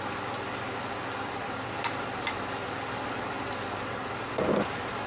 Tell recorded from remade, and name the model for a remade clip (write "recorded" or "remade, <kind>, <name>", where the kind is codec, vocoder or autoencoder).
recorded